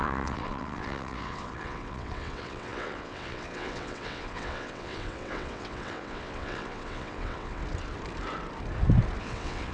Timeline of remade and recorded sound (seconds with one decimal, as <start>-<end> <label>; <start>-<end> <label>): 0.0-7.6 remade; 7.6-9.2 recorded; 9.2-9.7 remade